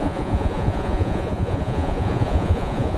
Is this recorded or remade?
remade